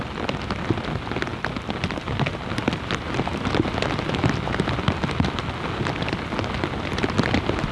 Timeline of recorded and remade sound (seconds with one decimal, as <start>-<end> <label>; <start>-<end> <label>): 0.0-7.7 recorded

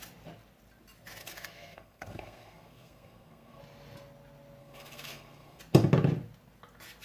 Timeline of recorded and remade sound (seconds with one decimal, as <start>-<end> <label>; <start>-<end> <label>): 0.0-1.2 recorded; 1.2-3.6 remade; 3.6-4.6 recorded; 4.6-5.6 remade; 5.6-7.0 recorded

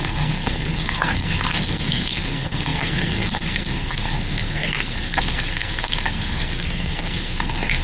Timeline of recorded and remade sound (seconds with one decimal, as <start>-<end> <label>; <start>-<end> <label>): 0.0-7.8 remade